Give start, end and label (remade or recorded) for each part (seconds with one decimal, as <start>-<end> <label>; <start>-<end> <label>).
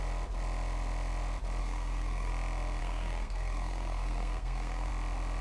0.0-1.6 recorded; 1.6-2.3 remade; 2.3-2.8 recorded; 2.8-4.9 remade; 4.9-5.4 recorded